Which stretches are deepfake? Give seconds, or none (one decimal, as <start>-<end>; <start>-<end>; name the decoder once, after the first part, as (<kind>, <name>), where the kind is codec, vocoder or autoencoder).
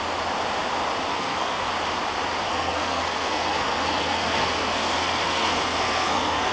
1.1-1.7 (codec, SNAC); 2.5-6.5